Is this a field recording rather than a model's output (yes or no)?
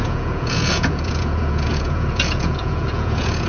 no